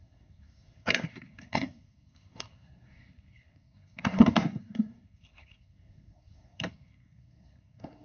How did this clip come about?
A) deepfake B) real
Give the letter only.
A